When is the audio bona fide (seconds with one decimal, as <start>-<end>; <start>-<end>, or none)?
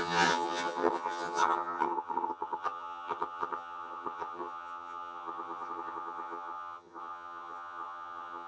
none